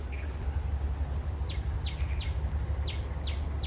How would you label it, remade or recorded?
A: recorded